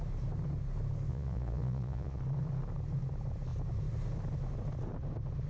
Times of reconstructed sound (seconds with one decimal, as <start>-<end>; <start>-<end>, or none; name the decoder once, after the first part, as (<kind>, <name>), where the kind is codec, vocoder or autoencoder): 1.1-2.2 (vocoder, Vocos)